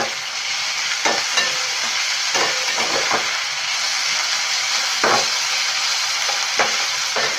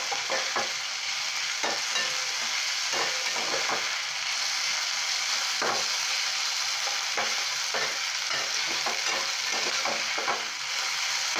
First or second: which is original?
second